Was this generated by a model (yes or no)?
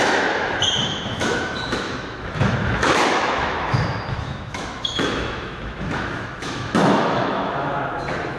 yes